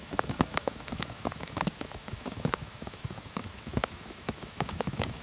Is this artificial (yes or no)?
yes